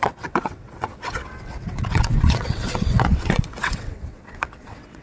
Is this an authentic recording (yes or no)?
no